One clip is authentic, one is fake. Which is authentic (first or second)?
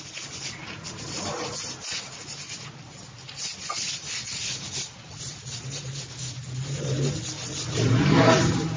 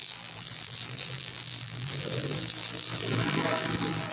first